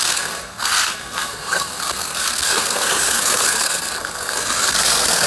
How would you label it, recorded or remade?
remade